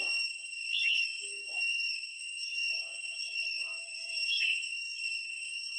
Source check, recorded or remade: remade